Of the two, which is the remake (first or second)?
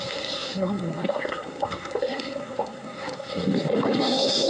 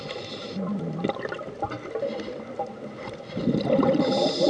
first